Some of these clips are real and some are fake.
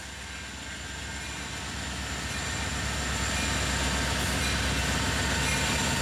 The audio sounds real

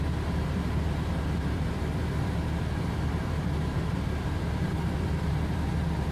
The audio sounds fake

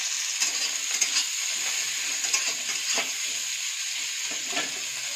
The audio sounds real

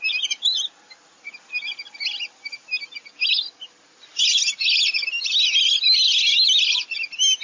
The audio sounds real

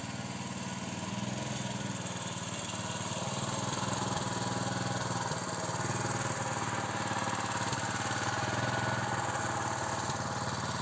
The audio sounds real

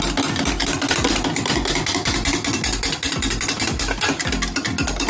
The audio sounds real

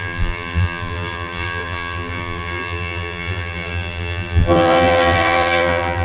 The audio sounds fake